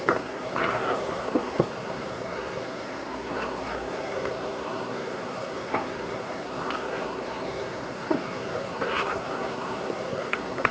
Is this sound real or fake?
fake